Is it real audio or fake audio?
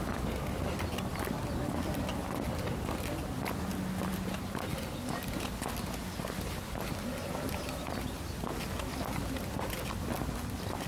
real